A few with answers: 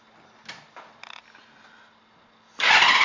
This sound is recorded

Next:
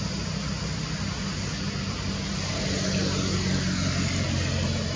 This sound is recorded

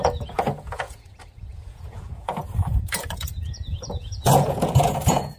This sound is remade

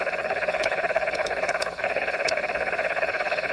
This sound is remade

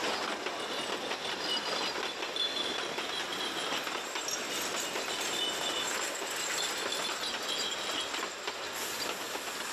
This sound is recorded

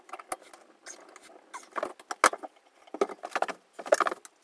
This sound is recorded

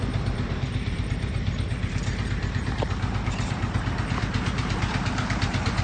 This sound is remade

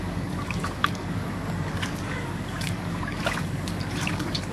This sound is remade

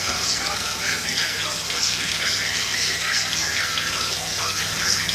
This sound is remade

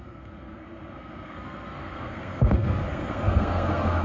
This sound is remade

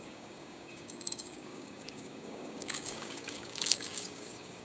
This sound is remade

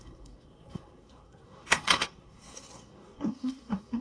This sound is remade